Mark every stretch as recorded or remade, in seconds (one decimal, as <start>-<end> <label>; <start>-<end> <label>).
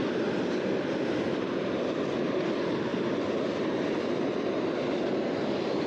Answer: 0.0-5.9 recorded